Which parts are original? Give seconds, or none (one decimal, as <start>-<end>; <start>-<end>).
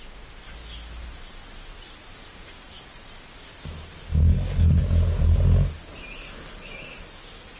0.0-4.3; 4.8-7.6